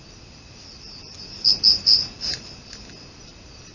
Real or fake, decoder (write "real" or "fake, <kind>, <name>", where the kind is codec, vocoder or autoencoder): real